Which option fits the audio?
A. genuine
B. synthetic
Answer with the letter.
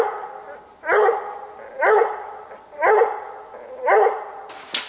A